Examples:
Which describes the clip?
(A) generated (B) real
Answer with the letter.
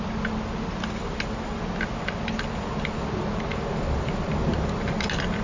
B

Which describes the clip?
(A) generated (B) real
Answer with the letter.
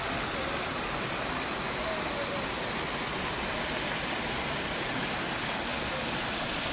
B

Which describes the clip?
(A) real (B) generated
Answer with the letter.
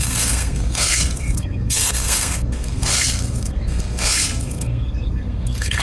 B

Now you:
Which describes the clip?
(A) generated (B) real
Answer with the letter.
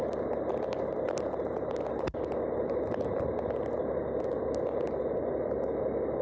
B